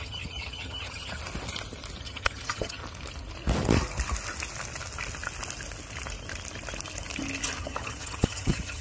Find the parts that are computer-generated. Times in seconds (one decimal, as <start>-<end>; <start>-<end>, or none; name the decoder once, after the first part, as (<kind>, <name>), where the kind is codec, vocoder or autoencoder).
0.0-1.2 (vocoder, HiFi-GAN); 2.0-2.8; 7.6-8.8